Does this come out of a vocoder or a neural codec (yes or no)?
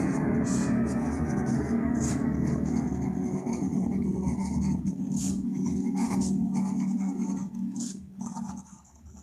yes